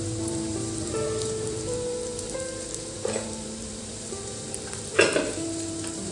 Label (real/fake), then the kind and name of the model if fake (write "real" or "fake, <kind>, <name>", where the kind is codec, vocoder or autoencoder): fake, vocoder, BigVGAN v2